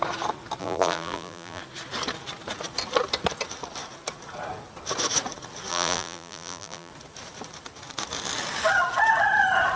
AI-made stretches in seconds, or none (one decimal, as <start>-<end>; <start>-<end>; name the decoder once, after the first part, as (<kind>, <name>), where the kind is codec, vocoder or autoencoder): 0.6-1.6 (vocoder, BigVGAN v2); 5.7-6.9

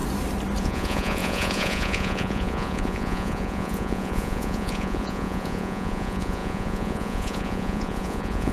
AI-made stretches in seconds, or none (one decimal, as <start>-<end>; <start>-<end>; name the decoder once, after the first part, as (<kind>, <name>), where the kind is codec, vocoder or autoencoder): 0.6-8.5 (vocoder, Vocos)

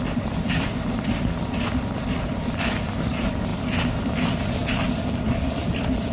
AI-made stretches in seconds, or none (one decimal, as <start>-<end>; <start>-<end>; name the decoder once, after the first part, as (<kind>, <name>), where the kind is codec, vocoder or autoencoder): 0.0-4.6 (vocoder, BigVGAN v2); 5.3-6.1

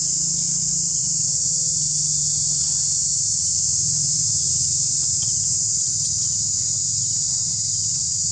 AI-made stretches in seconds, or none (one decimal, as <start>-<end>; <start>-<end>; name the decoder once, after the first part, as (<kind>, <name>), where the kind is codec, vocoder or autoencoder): none